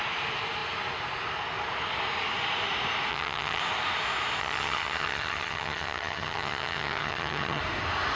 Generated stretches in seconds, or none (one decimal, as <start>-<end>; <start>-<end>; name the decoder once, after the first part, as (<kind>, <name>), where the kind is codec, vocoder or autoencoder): 3.1-3.6 (vocoder, HiFi-GAN); 4.4-7.6